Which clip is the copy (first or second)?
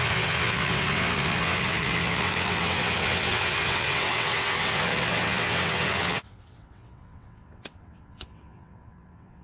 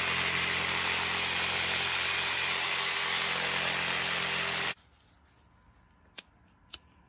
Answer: first